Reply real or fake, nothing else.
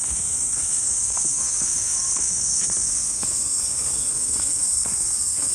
fake